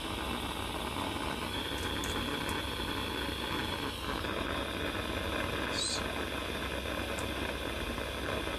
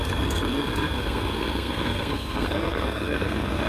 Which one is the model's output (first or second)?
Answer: second